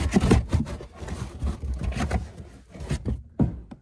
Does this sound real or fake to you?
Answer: real